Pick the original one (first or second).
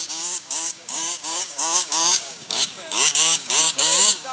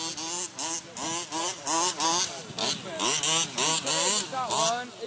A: second